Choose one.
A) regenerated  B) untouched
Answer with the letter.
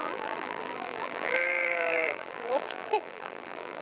A